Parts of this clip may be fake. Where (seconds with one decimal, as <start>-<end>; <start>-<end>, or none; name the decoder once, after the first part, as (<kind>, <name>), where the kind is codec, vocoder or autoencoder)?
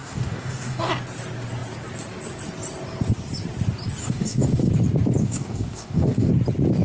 0.0-0.9 (codec, DAC); 4.0-4.7; 5.2-6.3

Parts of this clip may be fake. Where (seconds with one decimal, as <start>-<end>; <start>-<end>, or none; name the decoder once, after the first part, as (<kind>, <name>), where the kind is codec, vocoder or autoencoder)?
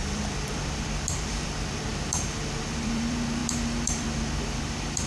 0.0-5.1 (vocoder, BigVGAN v2)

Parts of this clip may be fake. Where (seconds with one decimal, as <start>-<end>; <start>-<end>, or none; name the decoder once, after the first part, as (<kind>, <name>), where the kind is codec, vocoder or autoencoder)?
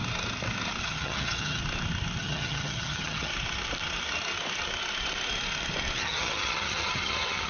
0.8-1.6 (vocoder, HiFi-GAN); 2.2-3.3; 6.0-7.5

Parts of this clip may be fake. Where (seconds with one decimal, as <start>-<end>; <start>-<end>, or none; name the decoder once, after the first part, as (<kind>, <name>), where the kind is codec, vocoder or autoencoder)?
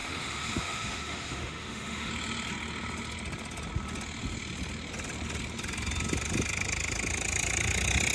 0.0-2.1 (autoencoder, DAC-VAE)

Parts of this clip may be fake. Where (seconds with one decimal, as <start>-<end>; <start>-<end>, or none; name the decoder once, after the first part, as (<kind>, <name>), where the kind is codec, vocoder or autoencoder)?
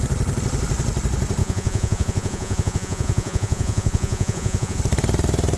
1.4-4.8 (vocoder, Vocos)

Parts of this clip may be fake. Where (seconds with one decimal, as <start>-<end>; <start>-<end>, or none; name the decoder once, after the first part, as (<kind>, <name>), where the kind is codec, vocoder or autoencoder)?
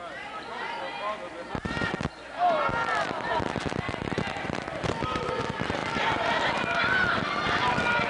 none